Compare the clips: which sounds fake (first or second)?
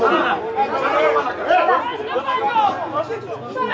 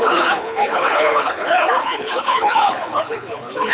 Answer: second